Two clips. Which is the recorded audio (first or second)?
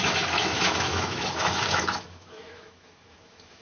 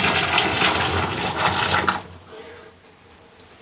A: second